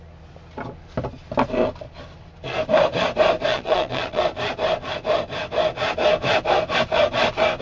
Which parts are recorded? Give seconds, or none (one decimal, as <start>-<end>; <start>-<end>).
0.0-3.5; 4.2-7.6